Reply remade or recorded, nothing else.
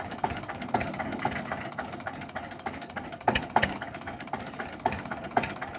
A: remade